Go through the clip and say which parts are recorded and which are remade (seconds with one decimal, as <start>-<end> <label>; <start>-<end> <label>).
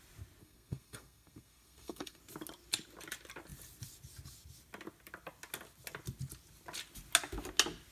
0.0-0.4 recorded; 0.4-2.2 remade; 2.2-7.9 recorded